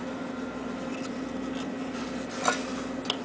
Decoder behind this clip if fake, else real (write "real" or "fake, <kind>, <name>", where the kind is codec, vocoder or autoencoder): real